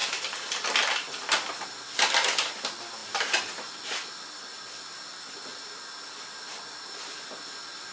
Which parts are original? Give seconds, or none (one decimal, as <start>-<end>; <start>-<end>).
2.5-5.5; 6.6-7.9